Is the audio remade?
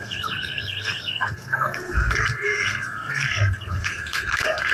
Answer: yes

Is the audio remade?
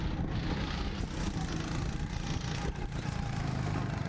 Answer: no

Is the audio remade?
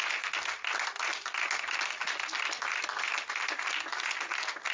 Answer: no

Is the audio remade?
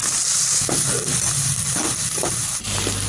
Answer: yes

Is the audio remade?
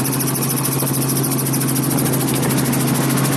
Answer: no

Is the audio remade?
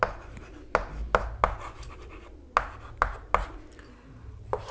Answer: no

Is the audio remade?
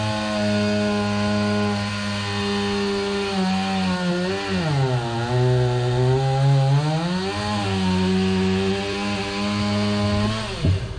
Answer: no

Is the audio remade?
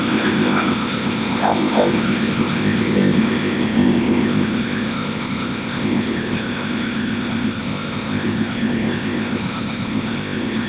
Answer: yes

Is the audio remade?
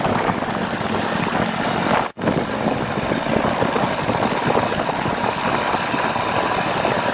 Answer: no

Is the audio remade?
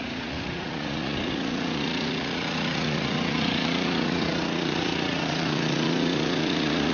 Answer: yes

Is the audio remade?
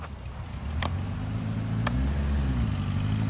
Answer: no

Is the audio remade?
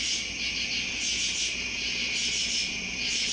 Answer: no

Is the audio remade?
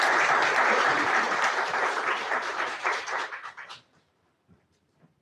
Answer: yes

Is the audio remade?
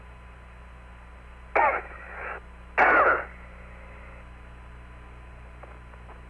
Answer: no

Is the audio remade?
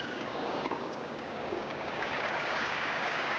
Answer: yes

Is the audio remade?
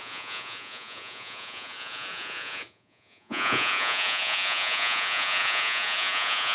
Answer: yes